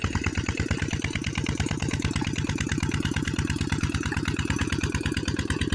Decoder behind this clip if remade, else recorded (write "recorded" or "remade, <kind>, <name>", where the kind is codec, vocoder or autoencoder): recorded